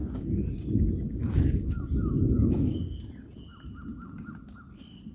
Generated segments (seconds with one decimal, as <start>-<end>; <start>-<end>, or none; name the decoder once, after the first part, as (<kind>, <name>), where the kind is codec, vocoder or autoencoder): 0.0-3.1 (codec, DAC)